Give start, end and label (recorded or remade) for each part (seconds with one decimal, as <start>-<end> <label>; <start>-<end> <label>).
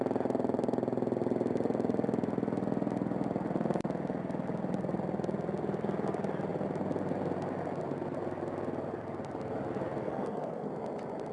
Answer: 0.0-10.0 recorded; 10.0-10.7 remade; 10.7-11.3 recorded